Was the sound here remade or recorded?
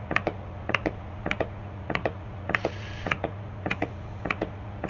remade